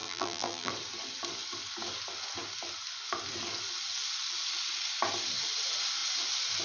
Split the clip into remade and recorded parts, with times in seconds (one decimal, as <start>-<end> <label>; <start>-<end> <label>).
0.0-0.7 remade; 0.7-6.6 recorded